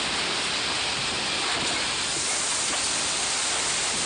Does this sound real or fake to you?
real